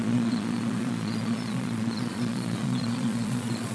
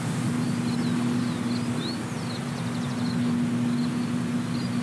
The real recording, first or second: second